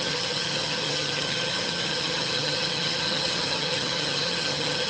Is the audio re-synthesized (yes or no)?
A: yes